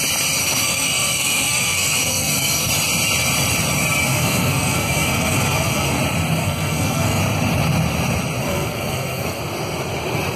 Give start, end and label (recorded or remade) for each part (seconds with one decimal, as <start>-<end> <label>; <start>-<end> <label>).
0.0-0.4 recorded; 0.4-2.7 remade; 2.7-4.1 recorded; 4.1-6.0 remade; 6.0-6.4 recorded; 6.4-7.2 remade; 7.2-8.4 recorded; 8.4-9.4 remade; 9.4-10.4 recorded